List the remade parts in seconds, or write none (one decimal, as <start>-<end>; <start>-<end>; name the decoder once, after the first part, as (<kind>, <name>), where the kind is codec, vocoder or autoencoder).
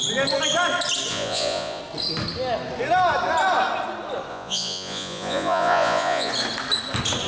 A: 1.1-1.8 (vocoder, Vocos); 4.3-6.3